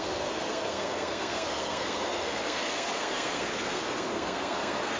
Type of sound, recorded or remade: remade